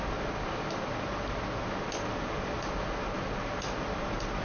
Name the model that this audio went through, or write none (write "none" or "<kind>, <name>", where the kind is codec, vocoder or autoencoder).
none